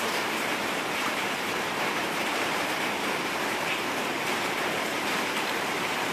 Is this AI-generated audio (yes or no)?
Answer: yes